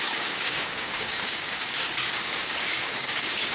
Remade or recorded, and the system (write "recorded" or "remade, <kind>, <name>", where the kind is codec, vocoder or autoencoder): remade, codec, DAC